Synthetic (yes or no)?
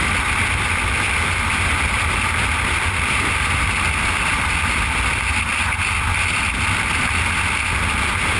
no